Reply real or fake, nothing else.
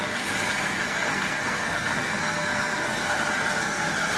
fake